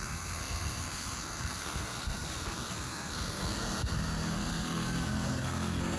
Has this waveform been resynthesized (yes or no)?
yes